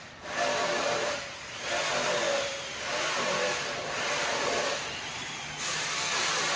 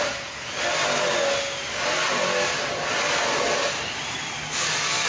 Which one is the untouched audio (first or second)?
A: second